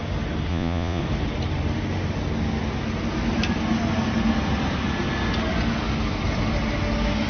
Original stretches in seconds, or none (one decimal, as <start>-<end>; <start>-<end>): 0.0-0.5; 1.0-7.3